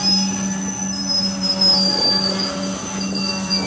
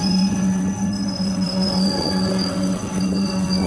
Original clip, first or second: first